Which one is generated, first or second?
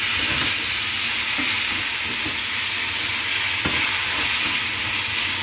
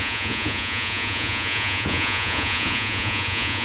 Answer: second